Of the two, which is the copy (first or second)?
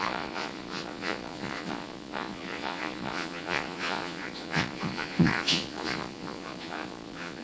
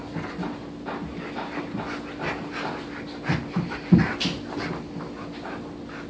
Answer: first